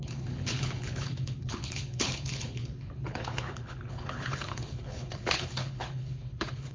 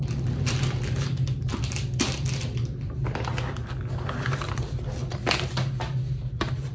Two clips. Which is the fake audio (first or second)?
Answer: first